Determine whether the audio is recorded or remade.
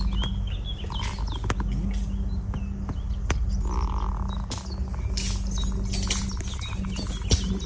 recorded